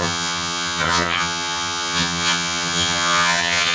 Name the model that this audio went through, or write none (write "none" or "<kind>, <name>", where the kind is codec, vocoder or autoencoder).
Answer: vocoder, HiFi-GAN